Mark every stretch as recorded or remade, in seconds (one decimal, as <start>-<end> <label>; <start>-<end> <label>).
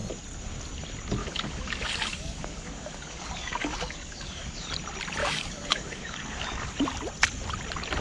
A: 0.0-1.2 recorded; 1.2-4.7 remade; 4.7-5.2 recorded; 5.2-6.7 remade; 6.7-8.0 recorded